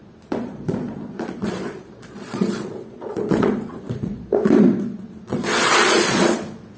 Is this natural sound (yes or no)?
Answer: no